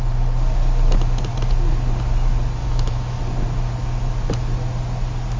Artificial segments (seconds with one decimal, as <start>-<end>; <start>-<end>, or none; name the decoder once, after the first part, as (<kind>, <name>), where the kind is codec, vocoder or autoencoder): 2.6-3.2 (autoencoder, DAC-VAE)